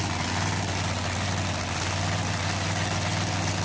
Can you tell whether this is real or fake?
real